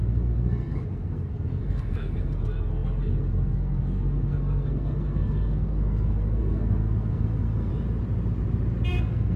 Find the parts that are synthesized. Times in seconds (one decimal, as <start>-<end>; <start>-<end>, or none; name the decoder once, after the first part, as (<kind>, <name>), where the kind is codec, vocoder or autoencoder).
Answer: 0.0-7.7 (codec, SNAC); 8.9-9.4